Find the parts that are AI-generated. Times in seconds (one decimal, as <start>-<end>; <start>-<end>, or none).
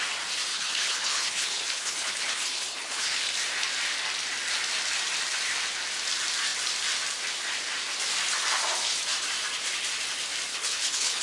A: 0.5-3.3; 10.5-11.2